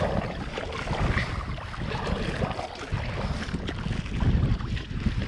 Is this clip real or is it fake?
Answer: real